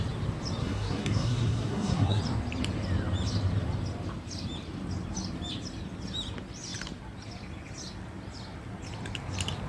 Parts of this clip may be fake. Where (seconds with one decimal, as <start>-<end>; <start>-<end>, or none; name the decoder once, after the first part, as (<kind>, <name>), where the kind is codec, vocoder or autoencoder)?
0.6-2.2 (codec, SNAC)